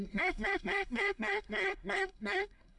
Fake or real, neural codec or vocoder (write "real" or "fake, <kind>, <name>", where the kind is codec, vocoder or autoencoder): fake, codec, SNAC